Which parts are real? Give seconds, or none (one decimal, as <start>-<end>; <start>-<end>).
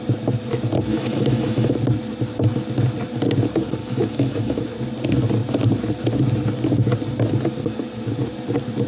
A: 0.0-0.9; 1.7-3.8; 4.6-8.9